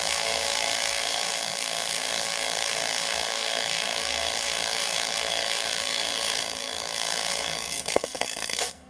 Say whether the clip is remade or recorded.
remade